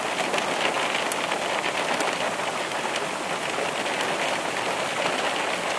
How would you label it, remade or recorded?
recorded